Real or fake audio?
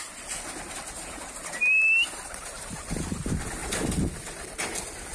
real